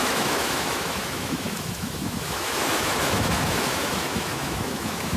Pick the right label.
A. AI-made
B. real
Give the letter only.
A